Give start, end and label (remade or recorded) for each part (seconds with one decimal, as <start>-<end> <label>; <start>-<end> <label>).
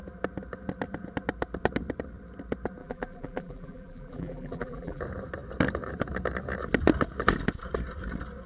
0.0-2.8 recorded; 2.8-5.0 remade; 5.0-8.5 recorded